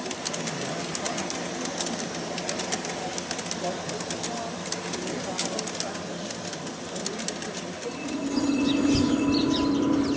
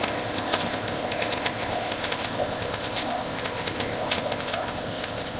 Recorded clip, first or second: first